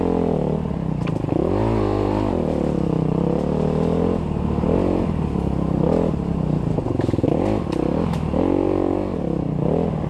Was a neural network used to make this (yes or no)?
no